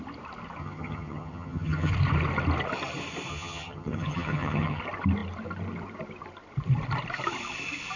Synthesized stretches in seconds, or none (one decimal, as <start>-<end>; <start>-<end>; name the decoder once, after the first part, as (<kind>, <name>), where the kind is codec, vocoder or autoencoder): 0.6-1.9 (vocoder, HiFi-GAN); 3.3-4.8